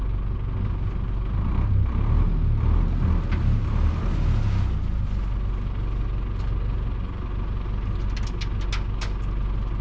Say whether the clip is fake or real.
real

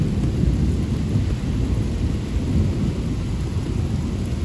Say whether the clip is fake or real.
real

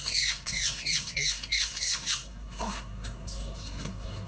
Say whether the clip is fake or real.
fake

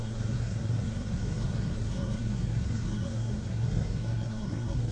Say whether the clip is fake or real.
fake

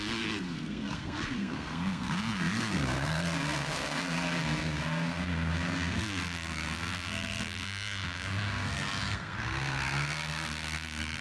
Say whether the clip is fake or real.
fake